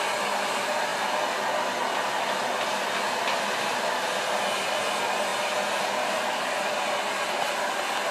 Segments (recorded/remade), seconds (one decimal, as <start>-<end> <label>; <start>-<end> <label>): 0.0-8.1 recorded